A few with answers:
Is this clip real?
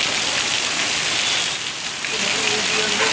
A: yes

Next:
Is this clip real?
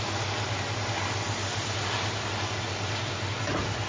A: yes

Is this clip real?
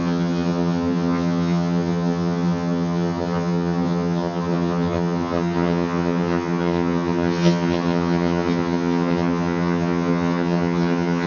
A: no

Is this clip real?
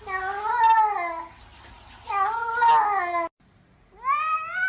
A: yes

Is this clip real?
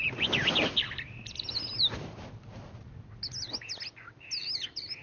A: yes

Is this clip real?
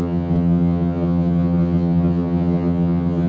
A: no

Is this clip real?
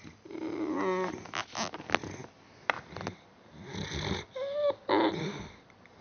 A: yes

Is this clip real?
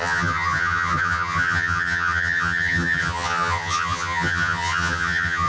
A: no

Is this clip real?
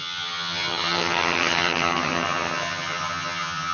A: no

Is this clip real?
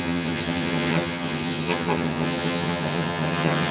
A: no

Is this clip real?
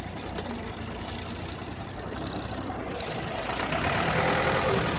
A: yes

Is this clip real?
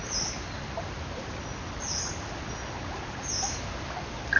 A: yes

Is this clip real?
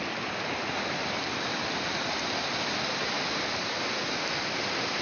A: yes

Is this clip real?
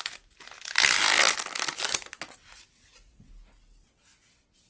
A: yes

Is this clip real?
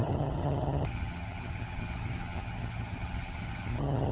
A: no